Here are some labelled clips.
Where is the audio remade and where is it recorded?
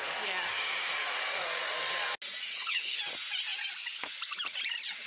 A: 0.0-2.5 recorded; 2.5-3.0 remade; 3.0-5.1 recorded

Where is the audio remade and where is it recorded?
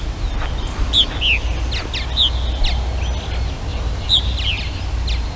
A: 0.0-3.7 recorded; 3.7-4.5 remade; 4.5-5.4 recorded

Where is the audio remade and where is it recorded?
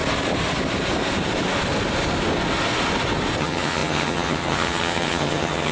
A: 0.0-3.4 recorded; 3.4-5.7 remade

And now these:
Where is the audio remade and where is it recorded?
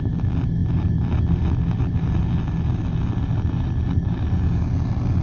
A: 0.0-5.2 recorded